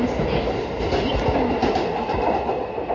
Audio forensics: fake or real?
real